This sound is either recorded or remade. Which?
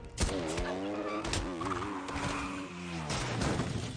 recorded